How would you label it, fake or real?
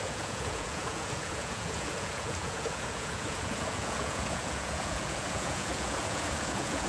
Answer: fake